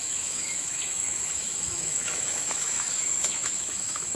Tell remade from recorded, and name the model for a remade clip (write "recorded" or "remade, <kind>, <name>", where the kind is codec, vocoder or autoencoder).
remade, autoencoder, DAC-VAE